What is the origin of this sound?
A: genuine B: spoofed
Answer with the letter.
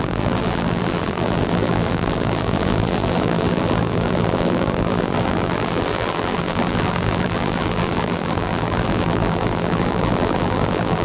B